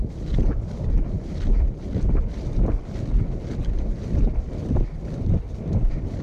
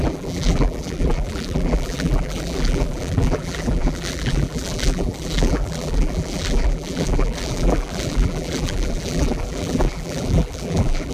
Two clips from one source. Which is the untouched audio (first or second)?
first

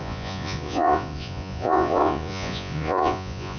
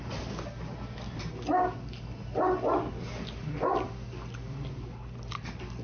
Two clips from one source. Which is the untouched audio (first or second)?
second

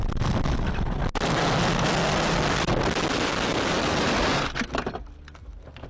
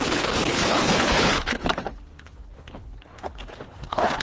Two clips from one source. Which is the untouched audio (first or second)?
first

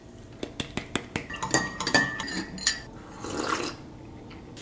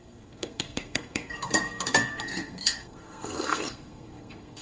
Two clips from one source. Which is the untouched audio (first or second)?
first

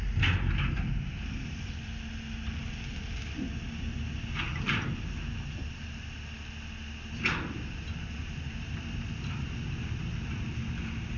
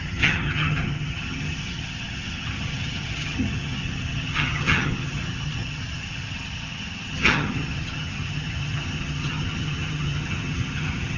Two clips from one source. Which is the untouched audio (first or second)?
first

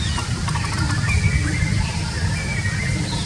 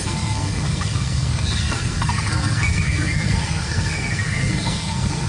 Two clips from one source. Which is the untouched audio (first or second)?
first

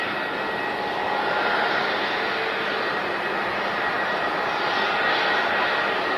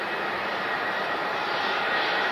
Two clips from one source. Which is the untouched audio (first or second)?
first